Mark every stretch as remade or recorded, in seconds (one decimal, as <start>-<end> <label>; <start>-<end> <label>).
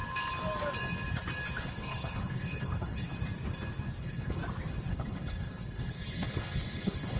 0.0-1.6 recorded; 1.6-3.1 remade; 3.1-4.0 recorded; 4.0-4.4 remade; 4.4-4.9 recorded; 4.9-7.2 remade